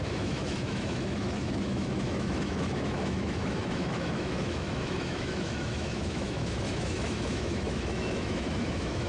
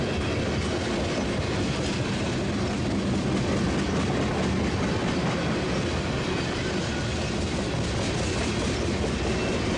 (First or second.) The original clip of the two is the second